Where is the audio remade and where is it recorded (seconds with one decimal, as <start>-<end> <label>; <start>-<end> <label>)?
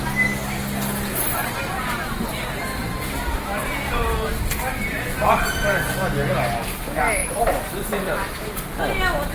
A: 0.0-9.3 recorded